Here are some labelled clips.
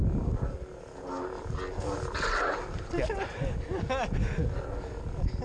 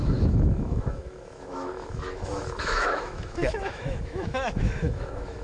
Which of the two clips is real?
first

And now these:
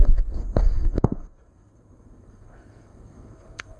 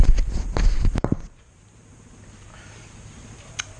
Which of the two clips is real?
second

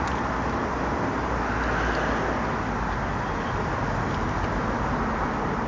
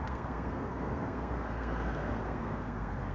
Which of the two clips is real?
first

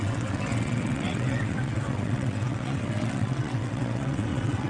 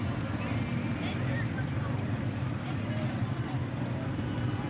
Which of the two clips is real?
second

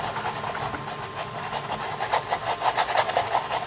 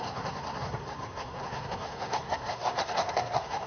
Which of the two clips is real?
first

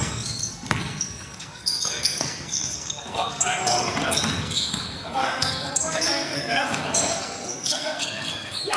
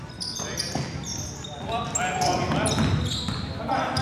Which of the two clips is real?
second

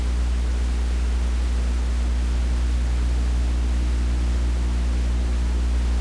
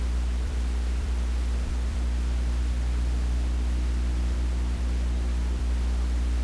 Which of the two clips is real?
first